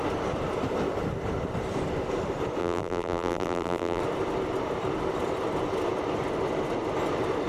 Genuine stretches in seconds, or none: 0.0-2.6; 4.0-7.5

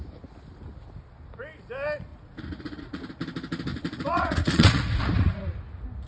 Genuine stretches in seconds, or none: 0.0-2.1; 3.0-3.7; 5.6-6.1

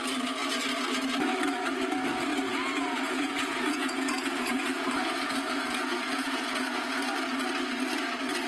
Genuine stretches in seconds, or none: 0.0-2.3; 6.9-8.5

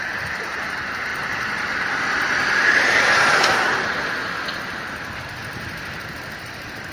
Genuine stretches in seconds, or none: 1.1-2.6; 4.2-6.4

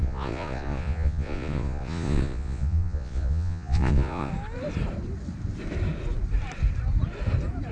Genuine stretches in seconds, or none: 4.3-7.7

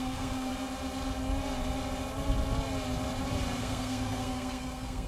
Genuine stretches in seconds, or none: 0.5-3.6

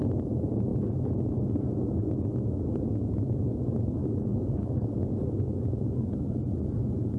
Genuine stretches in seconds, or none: 0.0-4.0; 4.9-7.2